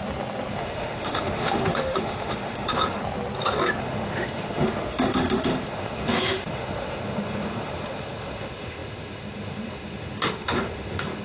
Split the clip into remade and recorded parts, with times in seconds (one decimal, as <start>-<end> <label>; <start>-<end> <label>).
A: 0.0-0.5 recorded; 0.5-3.0 remade; 3.0-3.8 recorded; 3.8-11.2 remade